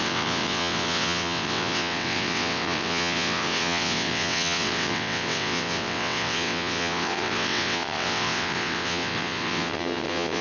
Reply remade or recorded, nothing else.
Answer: remade